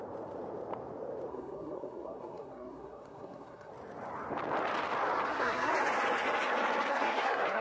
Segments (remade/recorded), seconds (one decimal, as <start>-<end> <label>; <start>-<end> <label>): 0.0-1.3 recorded; 1.3-3.7 remade; 3.7-5.3 recorded; 5.3-5.7 remade; 5.7-6.9 recorded; 6.9-7.6 remade